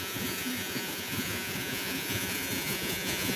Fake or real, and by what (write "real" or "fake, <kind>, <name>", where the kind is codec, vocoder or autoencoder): fake, vocoder, Vocos